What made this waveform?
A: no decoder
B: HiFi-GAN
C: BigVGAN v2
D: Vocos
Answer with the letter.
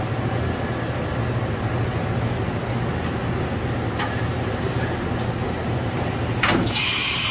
A